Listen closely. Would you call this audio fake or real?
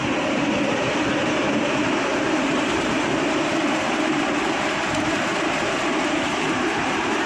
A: fake